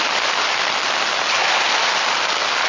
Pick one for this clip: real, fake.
real